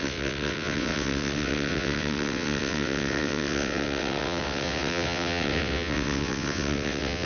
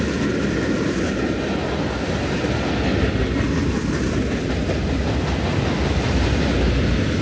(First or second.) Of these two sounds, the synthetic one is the first